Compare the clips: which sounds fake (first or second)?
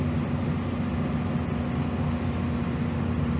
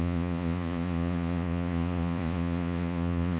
second